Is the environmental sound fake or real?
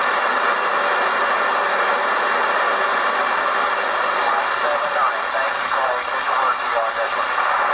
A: real